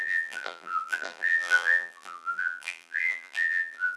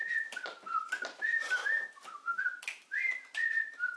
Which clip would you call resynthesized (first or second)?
first